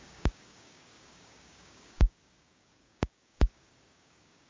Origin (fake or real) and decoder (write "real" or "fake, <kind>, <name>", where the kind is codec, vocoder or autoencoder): fake, codec, DAC